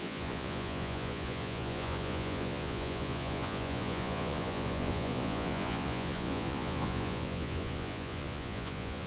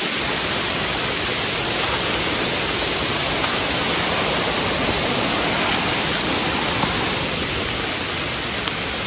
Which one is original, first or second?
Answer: second